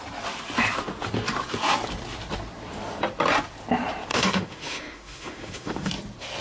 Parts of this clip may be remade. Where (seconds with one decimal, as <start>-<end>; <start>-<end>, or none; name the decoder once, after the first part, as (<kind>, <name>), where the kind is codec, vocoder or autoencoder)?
4.1-5.9 (autoencoder, DAC-VAE)